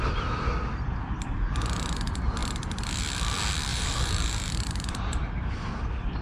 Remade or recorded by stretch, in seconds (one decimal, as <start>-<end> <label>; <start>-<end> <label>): 0.0-3.7 recorded; 3.7-5.3 remade; 5.3-6.2 recorded